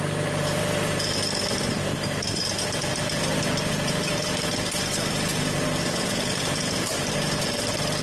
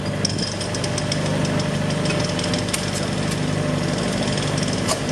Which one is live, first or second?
second